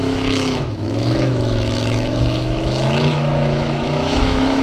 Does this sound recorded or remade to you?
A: remade